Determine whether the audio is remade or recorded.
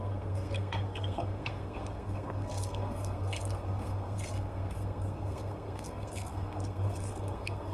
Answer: remade